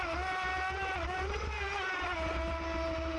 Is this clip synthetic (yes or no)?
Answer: no